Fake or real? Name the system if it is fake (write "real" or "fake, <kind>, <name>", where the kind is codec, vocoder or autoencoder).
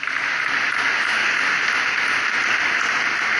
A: real